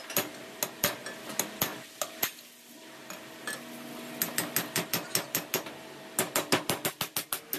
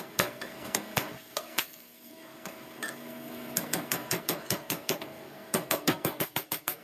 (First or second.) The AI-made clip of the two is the second